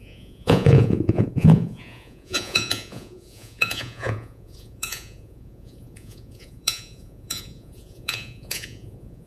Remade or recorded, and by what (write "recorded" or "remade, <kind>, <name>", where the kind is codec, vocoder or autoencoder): remade, vocoder, Vocos